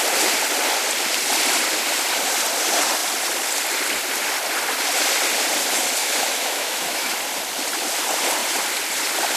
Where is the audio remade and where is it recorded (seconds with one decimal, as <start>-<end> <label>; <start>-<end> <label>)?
0.0-6.0 recorded; 6.0-7.1 remade; 7.1-9.4 recorded